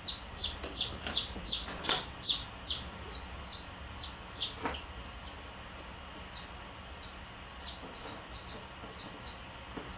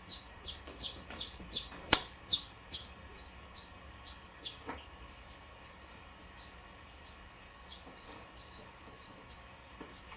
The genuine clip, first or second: first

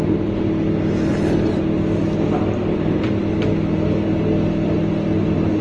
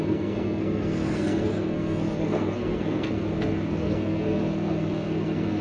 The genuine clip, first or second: first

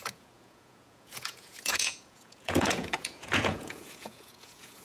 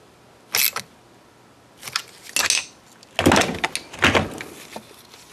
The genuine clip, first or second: second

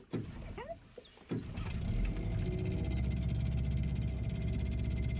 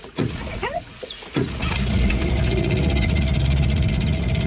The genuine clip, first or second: first